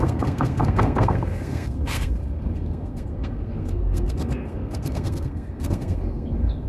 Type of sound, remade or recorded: remade